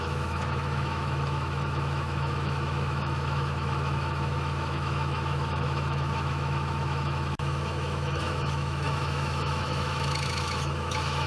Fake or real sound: fake